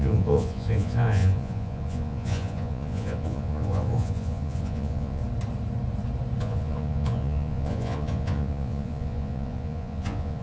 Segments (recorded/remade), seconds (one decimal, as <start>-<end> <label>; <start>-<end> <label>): 0.0-5.2 remade; 5.2-6.4 recorded; 6.4-10.4 remade